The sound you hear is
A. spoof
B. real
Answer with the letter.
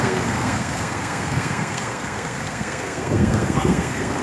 A